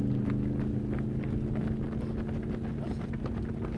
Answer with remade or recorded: recorded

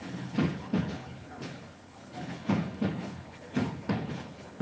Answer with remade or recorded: remade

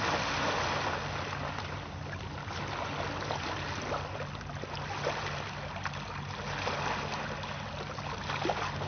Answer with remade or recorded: recorded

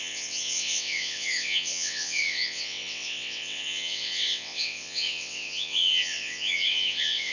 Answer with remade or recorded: remade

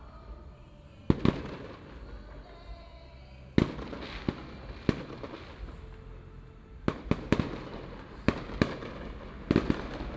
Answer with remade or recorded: recorded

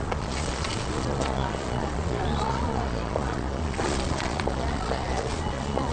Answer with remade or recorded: remade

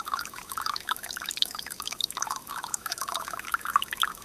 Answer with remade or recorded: remade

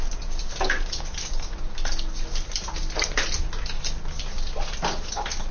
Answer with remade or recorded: recorded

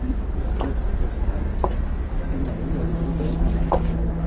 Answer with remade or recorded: recorded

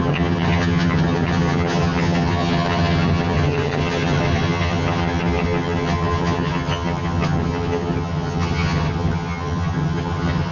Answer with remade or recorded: remade